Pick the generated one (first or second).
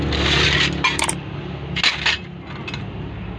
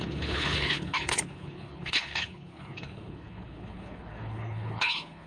second